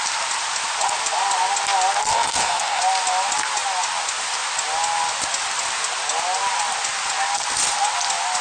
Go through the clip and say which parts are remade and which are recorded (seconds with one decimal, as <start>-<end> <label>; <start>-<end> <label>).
0.0-2.1 recorded; 2.1-2.8 remade; 2.8-8.4 recorded